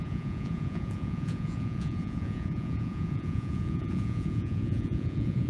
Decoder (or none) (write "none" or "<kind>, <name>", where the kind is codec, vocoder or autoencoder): vocoder, Vocos